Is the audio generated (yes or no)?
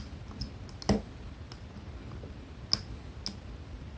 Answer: no